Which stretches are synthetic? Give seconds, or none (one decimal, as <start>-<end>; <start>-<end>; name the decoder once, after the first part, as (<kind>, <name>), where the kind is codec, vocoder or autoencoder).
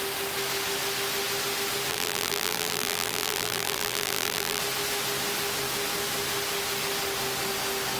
1.9-4.6 (vocoder, BigVGAN v2)